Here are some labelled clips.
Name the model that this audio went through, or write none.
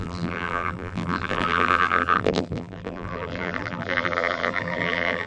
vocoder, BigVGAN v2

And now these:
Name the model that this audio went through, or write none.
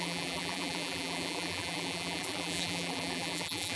vocoder, BigVGAN v2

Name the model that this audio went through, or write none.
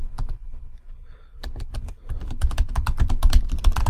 none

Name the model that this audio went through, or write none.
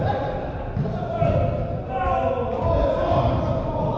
none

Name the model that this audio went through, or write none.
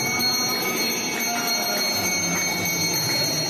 none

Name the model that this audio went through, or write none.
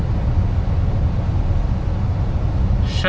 none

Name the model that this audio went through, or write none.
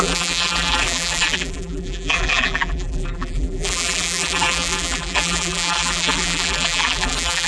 vocoder, BigVGAN v2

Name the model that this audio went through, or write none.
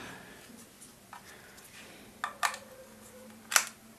none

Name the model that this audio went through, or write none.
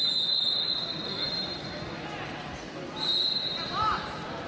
none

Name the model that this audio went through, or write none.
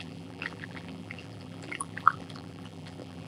vocoder, BigVGAN v2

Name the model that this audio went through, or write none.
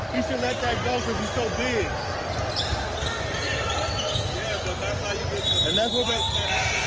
none